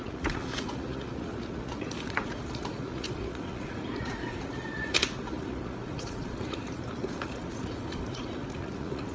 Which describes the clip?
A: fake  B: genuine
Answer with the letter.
A